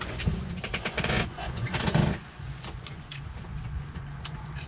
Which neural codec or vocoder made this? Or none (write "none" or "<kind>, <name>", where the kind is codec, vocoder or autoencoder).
vocoder, Vocos